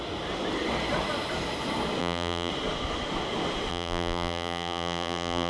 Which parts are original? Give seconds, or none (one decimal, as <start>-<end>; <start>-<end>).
0.0-2.0; 2.5-3.7